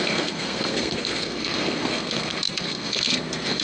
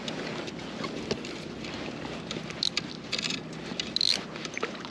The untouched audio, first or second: second